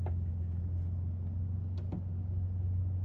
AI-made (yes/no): no